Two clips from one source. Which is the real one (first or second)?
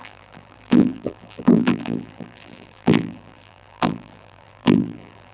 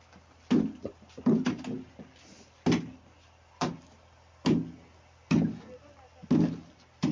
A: second